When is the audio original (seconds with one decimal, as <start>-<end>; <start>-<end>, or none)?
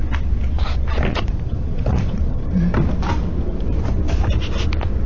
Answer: 0.0-1.1; 2.6-5.1